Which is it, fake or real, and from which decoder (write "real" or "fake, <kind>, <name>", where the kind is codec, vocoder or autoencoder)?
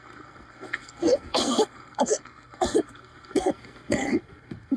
fake, codec, SNAC